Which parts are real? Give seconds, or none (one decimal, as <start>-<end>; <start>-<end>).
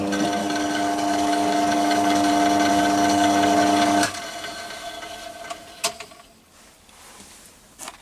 0.0-0.4; 2.3-2.7; 4.2-8.0